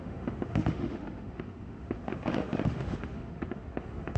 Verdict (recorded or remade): remade